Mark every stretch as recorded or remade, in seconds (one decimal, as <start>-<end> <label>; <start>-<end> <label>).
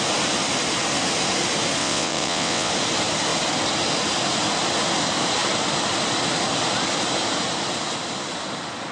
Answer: 0.0-1.8 recorded; 1.8-2.7 remade; 2.7-8.9 recorded